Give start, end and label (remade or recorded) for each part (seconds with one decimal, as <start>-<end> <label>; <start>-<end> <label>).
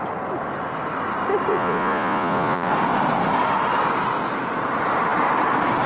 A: 0.0-1.5 recorded; 1.5-2.7 remade; 2.7-5.9 recorded